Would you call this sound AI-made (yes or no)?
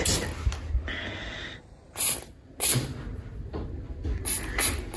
no